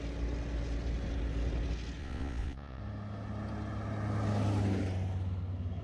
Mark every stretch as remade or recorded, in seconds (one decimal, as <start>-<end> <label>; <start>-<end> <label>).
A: 0.0-2.0 recorded; 2.0-2.8 remade; 2.8-5.8 recorded